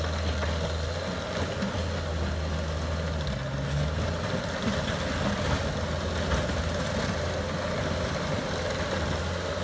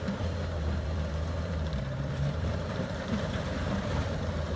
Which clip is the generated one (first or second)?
second